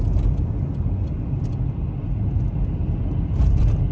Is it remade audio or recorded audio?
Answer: recorded